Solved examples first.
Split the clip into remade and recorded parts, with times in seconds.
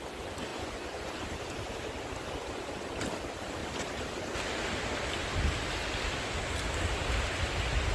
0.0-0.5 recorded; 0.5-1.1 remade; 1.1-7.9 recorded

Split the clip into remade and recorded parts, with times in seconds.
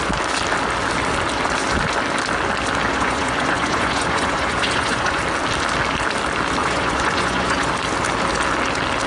0.0-2.9 recorded; 2.9-5.2 remade; 5.2-6.6 recorded; 6.6-7.7 remade; 7.7-9.1 recorded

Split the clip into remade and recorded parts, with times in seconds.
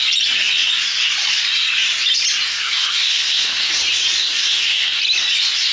0.0-2.5 recorded; 2.5-3.7 remade; 3.7-4.2 recorded; 4.2-5.0 remade; 5.0-5.7 recorded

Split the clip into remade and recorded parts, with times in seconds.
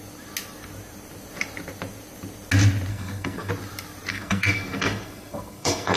0.0-2.9 recorded; 2.9-3.5 remade; 3.5-4.1 recorded; 4.1-6.0 remade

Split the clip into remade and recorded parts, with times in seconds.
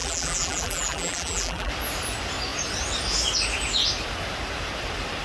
0.0-1.7 remade; 1.7-5.2 recorded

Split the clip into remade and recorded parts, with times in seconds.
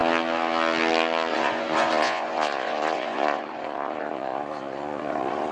0.0-1.3 recorded; 1.3-5.5 remade